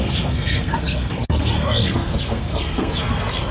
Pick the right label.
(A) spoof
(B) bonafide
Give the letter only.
A